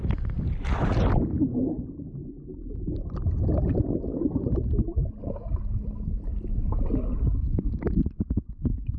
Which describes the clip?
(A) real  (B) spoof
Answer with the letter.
A